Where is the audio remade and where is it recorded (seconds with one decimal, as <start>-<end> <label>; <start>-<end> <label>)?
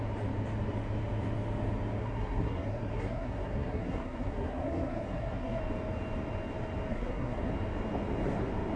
0.0-2.0 recorded; 2.0-5.6 remade; 5.6-6.9 recorded; 6.9-7.5 remade; 7.5-8.8 recorded